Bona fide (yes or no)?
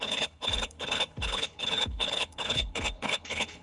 no